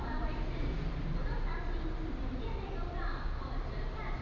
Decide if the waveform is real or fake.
real